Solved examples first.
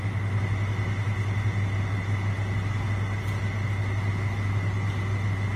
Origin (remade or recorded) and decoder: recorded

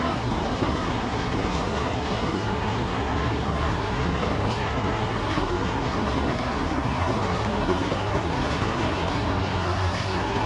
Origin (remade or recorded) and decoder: remade, codec, SNAC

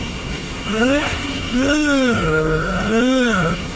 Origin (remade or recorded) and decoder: remade, codec, SNAC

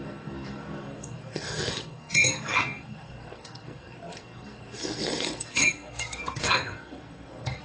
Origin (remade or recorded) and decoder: remade, codec, SNAC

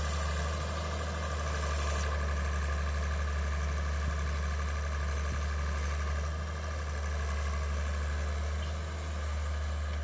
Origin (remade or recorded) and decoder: recorded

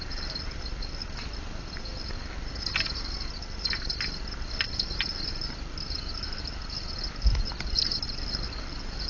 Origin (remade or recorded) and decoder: recorded